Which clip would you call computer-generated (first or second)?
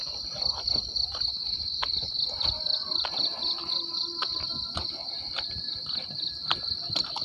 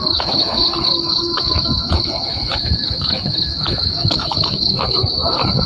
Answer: second